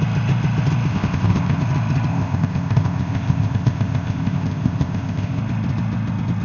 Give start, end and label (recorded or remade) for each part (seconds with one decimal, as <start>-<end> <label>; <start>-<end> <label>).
0.0-0.9 recorded; 0.9-1.6 remade; 1.6-2.1 recorded; 2.1-5.4 remade; 5.4-6.4 recorded